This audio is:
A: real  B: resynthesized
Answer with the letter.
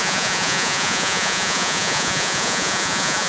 B